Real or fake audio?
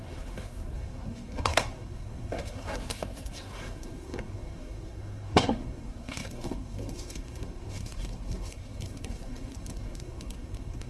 fake